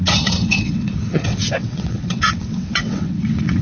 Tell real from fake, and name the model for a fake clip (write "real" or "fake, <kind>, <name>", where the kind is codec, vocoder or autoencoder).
fake, vocoder, WaveNeXt